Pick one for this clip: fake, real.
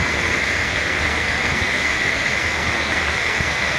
fake